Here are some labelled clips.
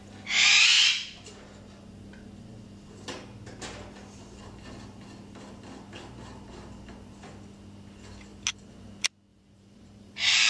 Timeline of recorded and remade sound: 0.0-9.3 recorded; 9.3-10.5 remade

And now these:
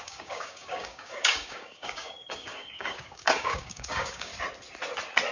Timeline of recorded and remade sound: 0.0-4.3 remade; 4.3-5.3 recorded

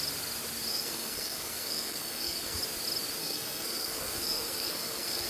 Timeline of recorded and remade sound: 0.0-0.7 recorded; 0.7-2.6 remade; 2.6-3.2 recorded; 3.2-5.3 remade

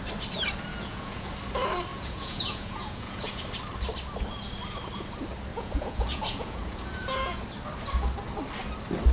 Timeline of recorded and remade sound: 0.0-0.7 recorded; 0.7-1.3 remade; 1.3-1.9 recorded; 1.9-3.4 remade; 3.4-5.5 recorded; 5.5-7.4 remade; 7.4-9.1 recorded

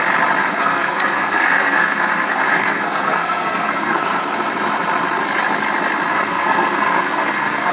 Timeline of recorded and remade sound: 0.0-0.4 recorded; 0.4-4.3 remade; 4.3-6.1 recorded; 6.1-7.7 remade

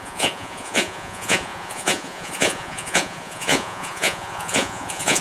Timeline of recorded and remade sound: 0.0-5.2 remade

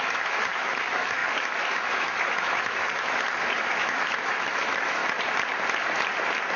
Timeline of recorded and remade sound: 0.0-5.0 remade; 5.0-6.6 recorded